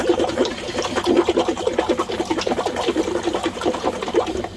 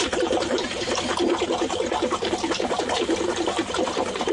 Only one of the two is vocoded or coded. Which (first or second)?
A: second